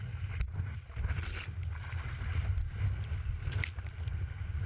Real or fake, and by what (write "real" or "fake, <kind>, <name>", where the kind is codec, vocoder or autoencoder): real